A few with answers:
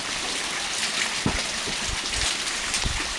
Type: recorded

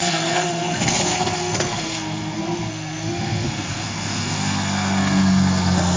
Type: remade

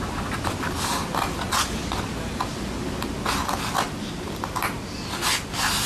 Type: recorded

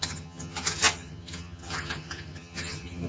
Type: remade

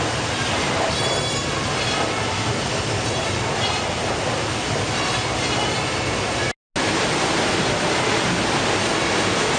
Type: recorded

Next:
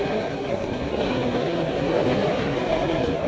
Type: remade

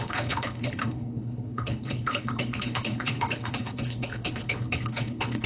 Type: remade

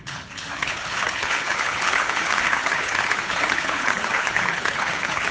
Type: remade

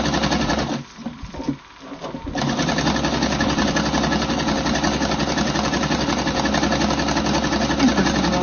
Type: recorded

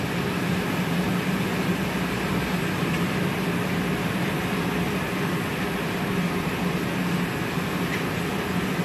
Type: remade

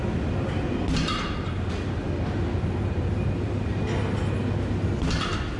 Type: recorded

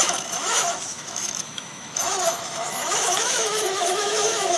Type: remade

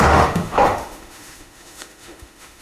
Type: remade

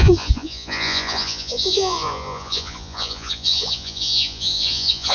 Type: remade